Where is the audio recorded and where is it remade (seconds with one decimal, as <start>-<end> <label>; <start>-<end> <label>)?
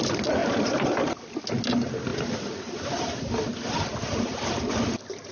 0.0-5.3 recorded